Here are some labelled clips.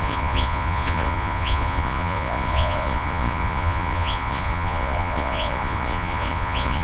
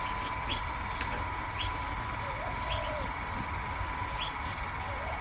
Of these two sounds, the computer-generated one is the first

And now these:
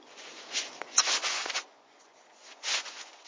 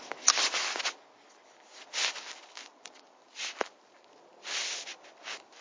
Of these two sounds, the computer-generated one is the first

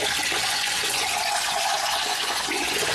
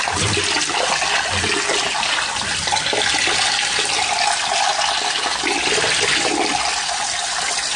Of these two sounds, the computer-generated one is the first